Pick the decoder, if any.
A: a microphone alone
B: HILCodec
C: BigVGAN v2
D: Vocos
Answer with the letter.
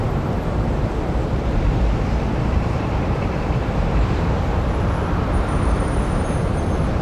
C